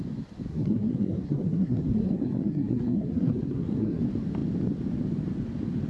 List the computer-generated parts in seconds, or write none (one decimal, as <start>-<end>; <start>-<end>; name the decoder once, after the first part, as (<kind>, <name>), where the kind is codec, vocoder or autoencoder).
0.5-4.0 (codec, SNAC)